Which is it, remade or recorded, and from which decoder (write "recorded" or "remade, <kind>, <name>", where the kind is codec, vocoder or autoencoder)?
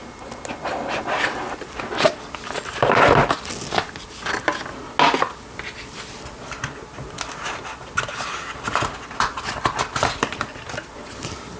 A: recorded